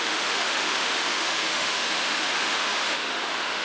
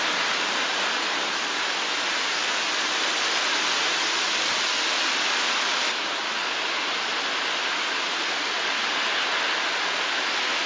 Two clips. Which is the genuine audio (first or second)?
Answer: second